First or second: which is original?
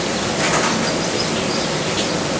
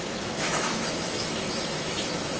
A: first